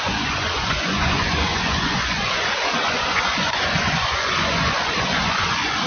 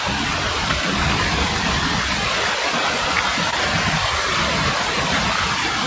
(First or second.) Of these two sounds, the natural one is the second